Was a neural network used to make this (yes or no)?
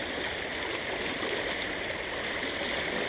no